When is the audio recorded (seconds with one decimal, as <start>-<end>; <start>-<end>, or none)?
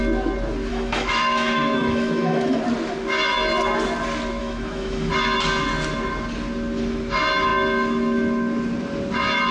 0.0-0.7; 2.6-4.4; 5.1-9.5